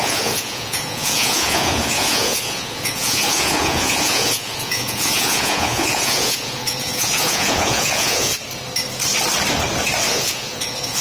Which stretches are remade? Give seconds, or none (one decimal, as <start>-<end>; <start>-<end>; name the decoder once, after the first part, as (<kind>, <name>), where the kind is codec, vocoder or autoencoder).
0.0-8.3 (vocoder, Vocos); 10.1-11.0